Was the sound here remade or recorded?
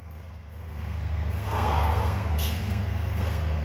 remade